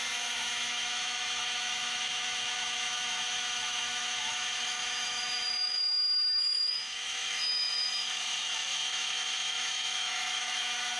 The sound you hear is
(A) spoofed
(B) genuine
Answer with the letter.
A